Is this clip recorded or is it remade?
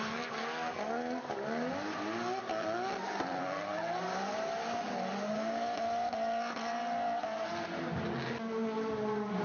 recorded